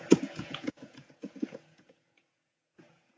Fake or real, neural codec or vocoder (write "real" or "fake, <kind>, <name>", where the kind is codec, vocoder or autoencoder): fake, vocoder, Vocos